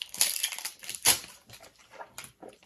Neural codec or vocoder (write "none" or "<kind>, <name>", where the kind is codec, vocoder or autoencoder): vocoder, BigVGAN v2